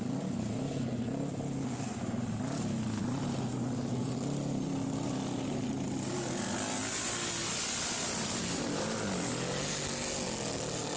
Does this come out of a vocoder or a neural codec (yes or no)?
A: no